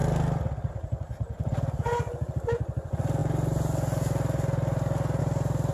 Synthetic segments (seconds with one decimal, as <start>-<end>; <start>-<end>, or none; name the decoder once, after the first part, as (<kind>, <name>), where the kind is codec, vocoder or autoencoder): none